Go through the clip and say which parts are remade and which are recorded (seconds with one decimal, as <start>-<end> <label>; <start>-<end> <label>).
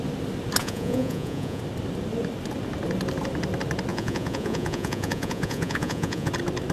0.0-0.6 recorded; 0.6-1.6 remade; 1.6-3.9 recorded; 3.9-6.3 remade; 6.3-6.7 recorded